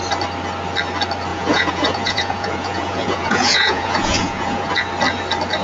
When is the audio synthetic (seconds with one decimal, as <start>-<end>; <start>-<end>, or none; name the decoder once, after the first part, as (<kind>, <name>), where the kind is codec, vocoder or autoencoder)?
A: 1.3-4.7 (vocoder, Vocos)